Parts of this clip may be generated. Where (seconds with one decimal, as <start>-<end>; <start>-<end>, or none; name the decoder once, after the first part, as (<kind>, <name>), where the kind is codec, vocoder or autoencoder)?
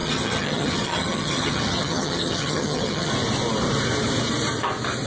0.0-3.1 (vocoder, HiFi-GAN)